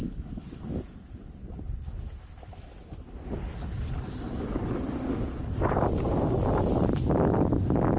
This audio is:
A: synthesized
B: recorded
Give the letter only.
B